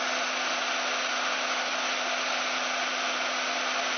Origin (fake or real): real